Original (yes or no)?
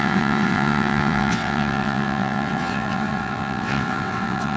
no